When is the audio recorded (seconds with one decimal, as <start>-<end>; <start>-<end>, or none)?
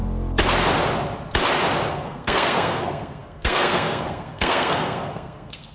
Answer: 0.0-1.9